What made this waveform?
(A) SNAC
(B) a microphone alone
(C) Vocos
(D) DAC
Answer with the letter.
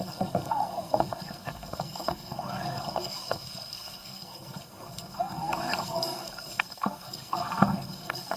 A